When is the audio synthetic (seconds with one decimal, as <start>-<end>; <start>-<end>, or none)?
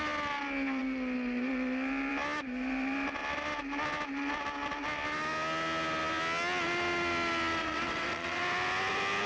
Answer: 7.6-8.4